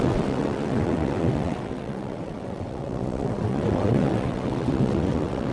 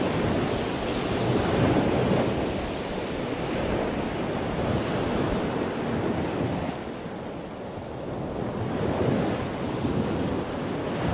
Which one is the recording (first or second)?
second